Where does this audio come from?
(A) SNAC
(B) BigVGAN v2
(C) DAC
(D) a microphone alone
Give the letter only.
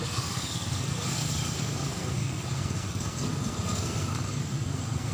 A